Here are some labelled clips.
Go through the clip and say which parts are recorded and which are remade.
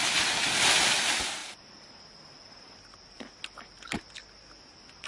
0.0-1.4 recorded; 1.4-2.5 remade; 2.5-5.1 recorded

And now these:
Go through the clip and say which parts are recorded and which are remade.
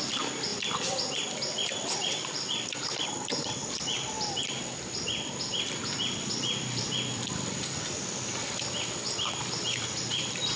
0.0-10.6 remade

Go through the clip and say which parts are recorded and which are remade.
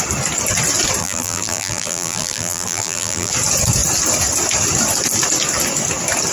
0.0-1.0 recorded; 1.0-3.3 remade; 3.3-6.3 recorded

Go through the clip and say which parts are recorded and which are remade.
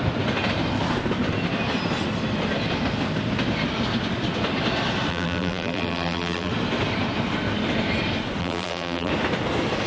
0.0-5.1 recorded; 5.1-6.5 remade; 6.5-8.4 recorded; 8.4-9.1 remade; 9.1-9.9 recorded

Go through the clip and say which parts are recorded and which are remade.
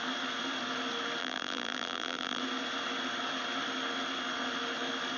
0.0-1.2 recorded; 1.2-2.4 remade; 2.4-5.2 recorded